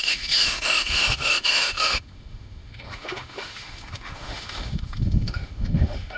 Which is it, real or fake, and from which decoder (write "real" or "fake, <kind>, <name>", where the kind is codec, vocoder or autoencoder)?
fake, autoencoder, DAC-VAE